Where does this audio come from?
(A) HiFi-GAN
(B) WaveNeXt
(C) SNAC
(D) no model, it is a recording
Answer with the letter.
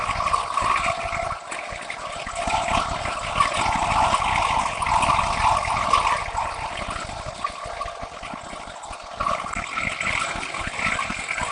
D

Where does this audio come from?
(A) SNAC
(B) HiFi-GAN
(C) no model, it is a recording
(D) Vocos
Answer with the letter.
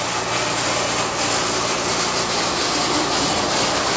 C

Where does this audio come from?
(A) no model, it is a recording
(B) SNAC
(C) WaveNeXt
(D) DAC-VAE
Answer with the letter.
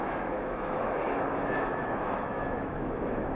D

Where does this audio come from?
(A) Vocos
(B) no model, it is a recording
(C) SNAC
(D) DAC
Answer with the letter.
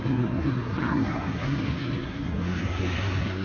C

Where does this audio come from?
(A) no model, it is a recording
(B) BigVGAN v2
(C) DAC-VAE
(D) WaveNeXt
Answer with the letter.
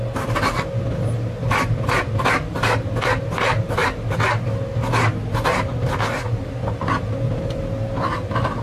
A